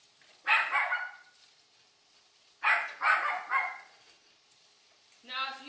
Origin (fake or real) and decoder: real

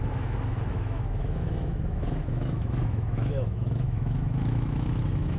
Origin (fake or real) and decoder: fake, autoencoder, DAC-VAE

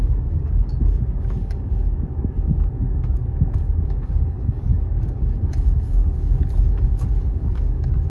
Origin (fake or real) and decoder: fake, codec, DAC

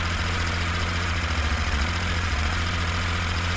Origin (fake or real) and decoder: fake, vocoder, Vocos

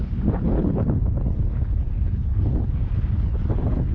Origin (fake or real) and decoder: fake, codec, HILCodec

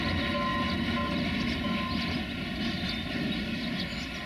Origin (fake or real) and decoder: real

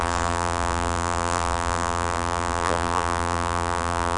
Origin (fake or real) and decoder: fake, vocoder, BigVGAN v2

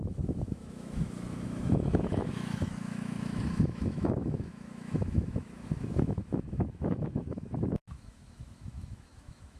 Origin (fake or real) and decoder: fake, autoencoder, DAC-VAE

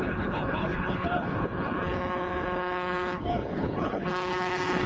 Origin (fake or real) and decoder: fake, codec, HILCodec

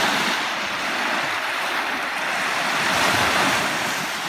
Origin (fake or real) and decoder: real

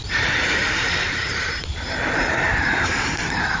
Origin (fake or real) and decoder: fake, vocoder, BigVGAN v2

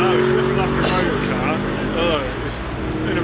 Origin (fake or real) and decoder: real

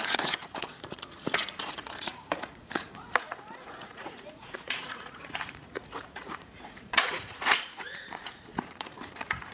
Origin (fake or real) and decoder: fake, vocoder, Vocos